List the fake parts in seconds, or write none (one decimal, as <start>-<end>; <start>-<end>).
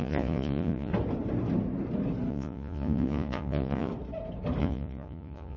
0.0-0.9; 2.3-3.9; 4.6-5.6